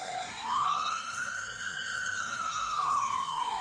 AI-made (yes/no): yes